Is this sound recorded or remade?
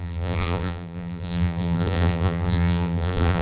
remade